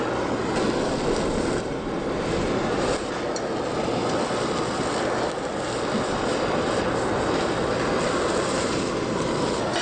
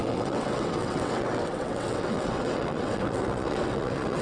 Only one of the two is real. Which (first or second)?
first